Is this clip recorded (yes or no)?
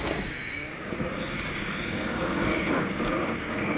no